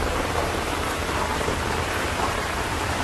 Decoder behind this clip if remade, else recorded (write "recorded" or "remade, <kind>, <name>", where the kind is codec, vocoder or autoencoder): remade, vocoder, BigVGAN v2